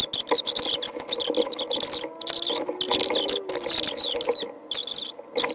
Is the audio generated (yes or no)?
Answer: no